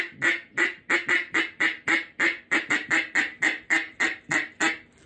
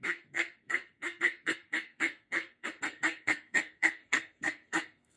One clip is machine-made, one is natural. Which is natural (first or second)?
first